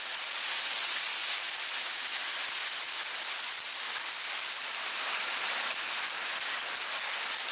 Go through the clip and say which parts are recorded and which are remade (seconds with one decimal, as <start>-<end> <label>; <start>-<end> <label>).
0.0-7.5 recorded